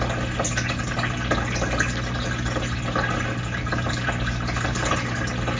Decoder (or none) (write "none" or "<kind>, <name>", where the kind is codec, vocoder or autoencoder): none